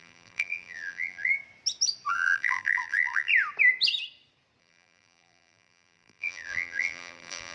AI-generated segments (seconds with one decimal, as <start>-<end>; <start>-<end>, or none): 0.0-1.3; 2.1-3.3; 4.6-7.5